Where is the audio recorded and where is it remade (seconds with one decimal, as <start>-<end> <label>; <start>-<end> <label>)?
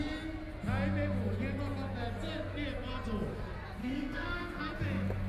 0.0-3.8 recorded; 3.8-4.6 remade; 4.6-5.3 recorded